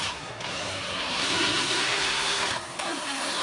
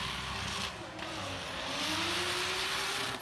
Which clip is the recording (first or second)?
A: second